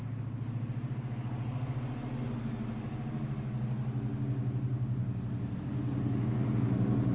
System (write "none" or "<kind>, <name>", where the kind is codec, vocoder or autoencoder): none